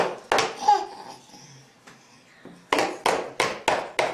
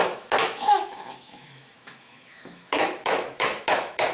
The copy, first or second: second